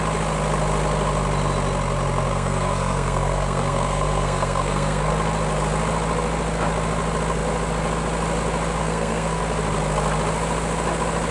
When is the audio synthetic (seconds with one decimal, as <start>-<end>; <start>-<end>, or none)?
2.3-5.1; 8.8-9.4